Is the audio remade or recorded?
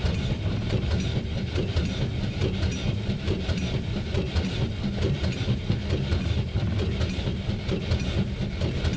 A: remade